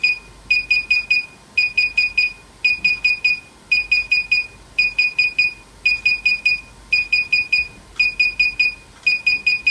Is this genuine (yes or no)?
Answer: yes